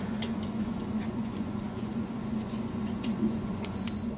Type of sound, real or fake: fake